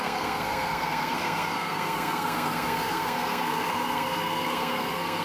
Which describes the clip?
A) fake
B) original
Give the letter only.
A